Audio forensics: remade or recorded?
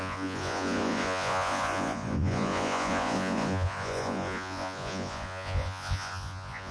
remade